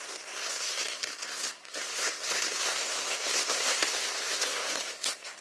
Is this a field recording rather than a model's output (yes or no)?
no